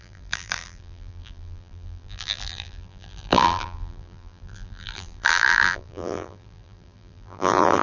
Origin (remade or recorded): remade